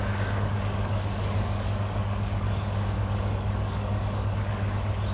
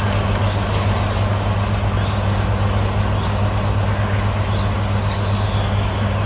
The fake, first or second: first